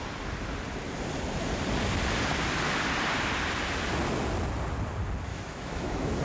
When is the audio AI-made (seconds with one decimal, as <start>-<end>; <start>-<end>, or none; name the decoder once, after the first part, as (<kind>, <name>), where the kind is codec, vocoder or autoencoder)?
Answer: 5.3-6.2 (autoencoder, DAC-VAE)